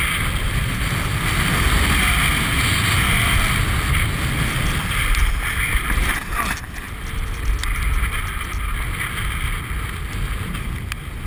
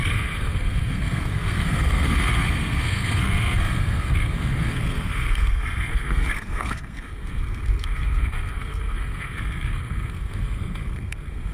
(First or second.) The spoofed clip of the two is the second